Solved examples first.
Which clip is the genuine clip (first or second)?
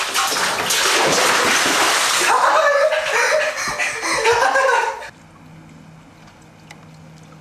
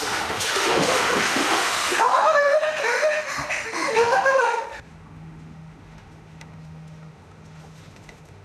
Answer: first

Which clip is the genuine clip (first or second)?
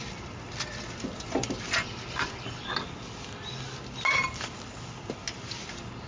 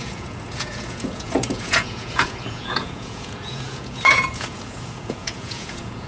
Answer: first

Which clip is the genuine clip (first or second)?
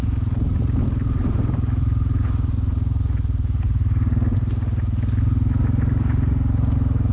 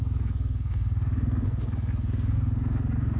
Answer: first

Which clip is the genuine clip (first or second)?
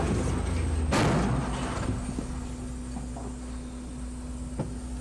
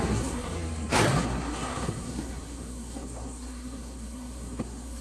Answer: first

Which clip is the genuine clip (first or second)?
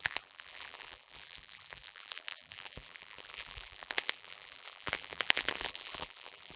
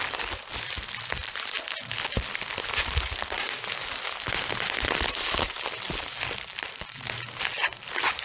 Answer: second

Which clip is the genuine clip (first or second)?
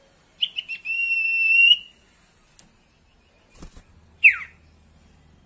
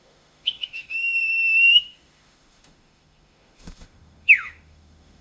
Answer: first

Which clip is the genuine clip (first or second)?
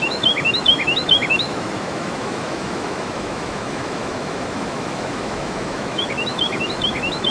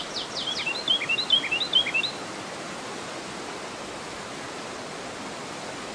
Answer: second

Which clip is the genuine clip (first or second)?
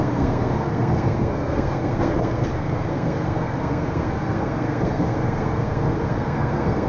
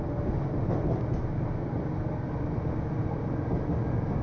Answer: second